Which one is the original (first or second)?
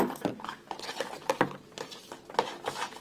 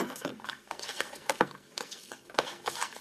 first